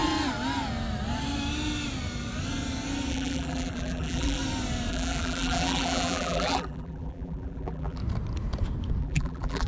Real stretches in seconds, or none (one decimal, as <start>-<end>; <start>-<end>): 0.0-3.1; 4.4-4.9; 8.0-9.0